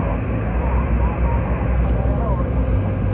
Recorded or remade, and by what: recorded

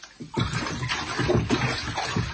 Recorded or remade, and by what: recorded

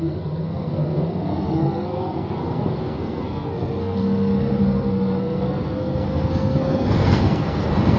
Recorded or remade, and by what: remade, codec, SNAC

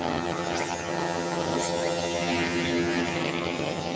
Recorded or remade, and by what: remade, vocoder, HiFi-GAN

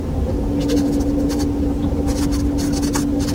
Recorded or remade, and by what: recorded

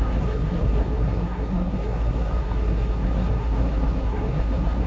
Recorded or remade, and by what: remade, codec, SNAC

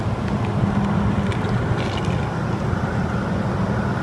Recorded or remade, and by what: recorded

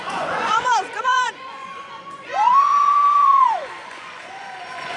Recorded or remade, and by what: remade, vocoder, Vocos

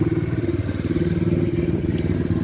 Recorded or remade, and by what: recorded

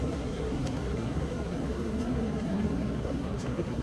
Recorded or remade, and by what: remade, codec, SNAC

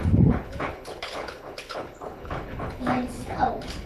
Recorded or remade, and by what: remade, codec, HILCodec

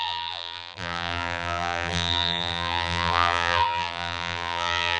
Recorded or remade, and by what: remade, vocoder, BigVGAN v2